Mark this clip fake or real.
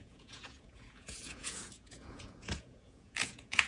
fake